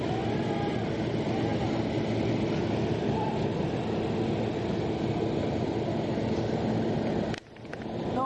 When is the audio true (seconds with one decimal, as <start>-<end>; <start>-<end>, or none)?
0.0-8.3